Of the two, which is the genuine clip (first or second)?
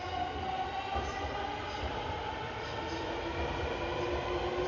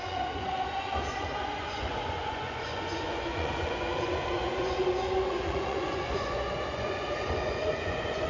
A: first